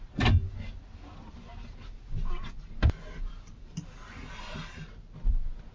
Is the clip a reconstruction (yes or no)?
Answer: no